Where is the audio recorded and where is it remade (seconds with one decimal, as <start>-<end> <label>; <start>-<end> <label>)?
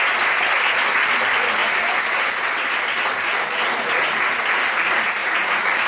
0.0-1.6 recorded; 1.6-2.8 remade; 2.8-5.2 recorded; 5.2-5.9 remade